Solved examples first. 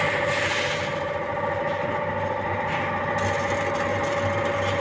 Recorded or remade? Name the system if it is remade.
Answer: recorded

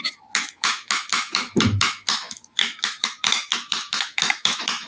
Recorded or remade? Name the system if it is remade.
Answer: remade, autoencoder, DAC-VAE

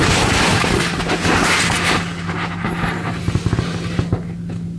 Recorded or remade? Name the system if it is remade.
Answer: recorded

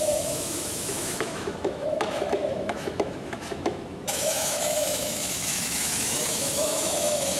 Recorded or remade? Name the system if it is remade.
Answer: remade, autoencoder, DAC-VAE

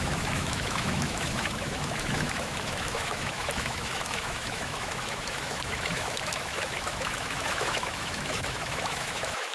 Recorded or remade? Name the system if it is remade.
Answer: remade, autoencoder, DAC-VAE